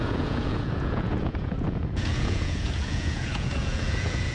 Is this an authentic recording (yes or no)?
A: no